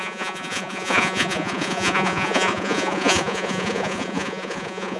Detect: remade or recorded remade